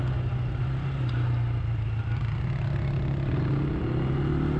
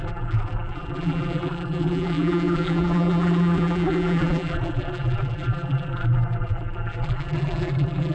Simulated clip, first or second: second